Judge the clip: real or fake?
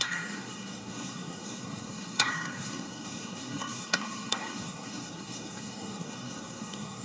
fake